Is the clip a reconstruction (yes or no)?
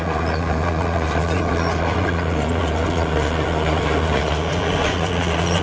yes